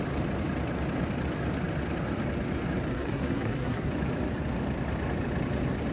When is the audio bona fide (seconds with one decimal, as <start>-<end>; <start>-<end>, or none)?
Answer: 0.0-2.9; 3.9-5.9